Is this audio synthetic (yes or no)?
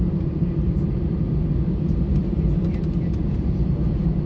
no